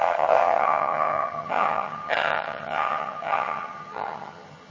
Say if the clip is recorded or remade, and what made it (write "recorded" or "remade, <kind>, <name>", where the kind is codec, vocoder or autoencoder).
remade, vocoder, HiFi-GAN